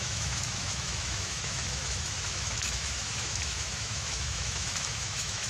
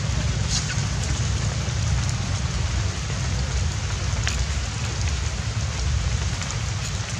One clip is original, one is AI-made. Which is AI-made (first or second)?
first